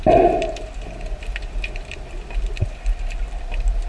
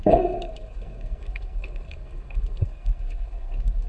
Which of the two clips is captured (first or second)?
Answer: first